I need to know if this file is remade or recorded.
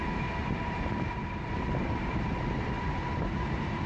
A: remade